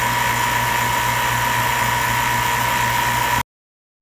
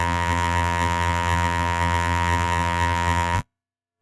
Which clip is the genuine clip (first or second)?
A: first